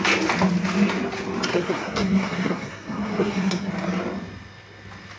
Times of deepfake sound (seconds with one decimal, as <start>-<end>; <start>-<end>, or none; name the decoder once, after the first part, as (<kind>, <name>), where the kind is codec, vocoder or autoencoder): 1.5-3.7 (codec, SNAC)